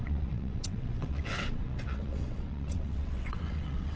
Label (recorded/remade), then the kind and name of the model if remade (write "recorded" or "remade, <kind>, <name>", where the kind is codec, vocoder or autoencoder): remade, vocoder, WaveNeXt